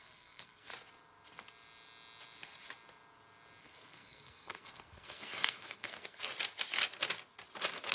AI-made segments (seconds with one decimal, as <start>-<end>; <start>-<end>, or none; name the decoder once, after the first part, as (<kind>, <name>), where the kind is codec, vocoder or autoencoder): 0.0-0.7 (codec, SNAC); 3.6-6.3